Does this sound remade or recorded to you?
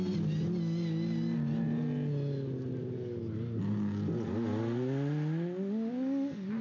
recorded